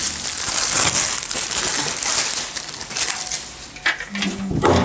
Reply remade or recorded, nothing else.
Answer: recorded